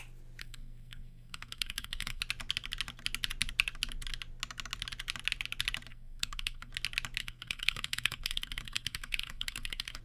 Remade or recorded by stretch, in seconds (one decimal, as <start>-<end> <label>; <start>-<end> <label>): 0.0-0.4 recorded; 0.4-2.2 remade; 2.2-5.9 recorded; 5.9-6.7 remade; 6.7-7.2 recorded; 7.2-10.0 remade